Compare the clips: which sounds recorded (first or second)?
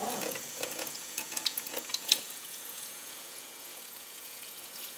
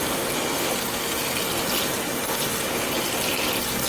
second